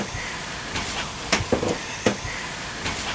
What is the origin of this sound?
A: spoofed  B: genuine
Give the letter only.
A